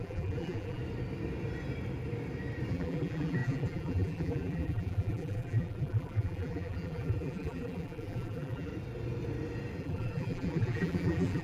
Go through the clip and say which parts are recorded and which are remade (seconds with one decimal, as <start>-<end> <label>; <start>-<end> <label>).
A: 0.0-0.8 remade; 0.8-2.7 recorded; 2.7-8.7 remade; 8.7-9.8 recorded; 9.8-11.4 remade